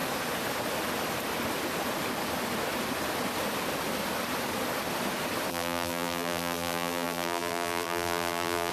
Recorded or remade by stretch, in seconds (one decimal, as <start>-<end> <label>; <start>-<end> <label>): 0.0-5.5 recorded; 5.5-8.7 remade